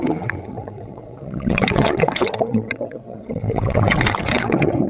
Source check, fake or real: fake